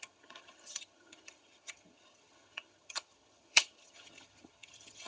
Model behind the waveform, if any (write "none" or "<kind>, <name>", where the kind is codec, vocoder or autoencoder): vocoder, HiFi-GAN